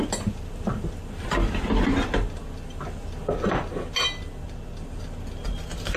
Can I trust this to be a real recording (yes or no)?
yes